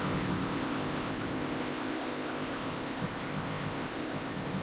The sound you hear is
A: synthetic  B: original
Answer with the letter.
A